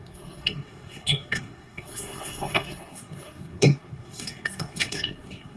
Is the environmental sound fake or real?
fake